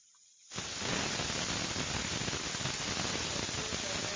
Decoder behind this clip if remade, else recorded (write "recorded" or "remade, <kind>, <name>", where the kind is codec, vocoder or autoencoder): recorded